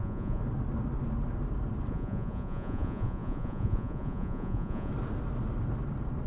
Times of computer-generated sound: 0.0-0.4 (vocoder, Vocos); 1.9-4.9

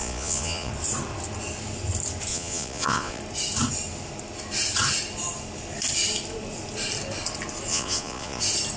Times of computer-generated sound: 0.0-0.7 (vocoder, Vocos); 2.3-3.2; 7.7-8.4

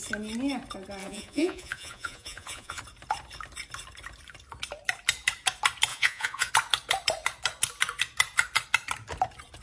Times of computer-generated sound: 1.0-2.8 (vocoder, Vocos); 5.9-6.5

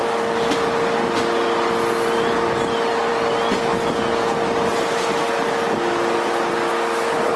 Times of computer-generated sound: none